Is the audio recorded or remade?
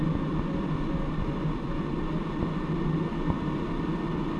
recorded